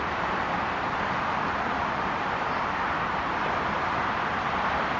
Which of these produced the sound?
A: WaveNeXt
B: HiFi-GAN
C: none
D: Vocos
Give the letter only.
C